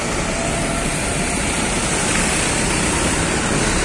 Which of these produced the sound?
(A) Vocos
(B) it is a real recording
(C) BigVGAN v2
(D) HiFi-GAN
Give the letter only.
B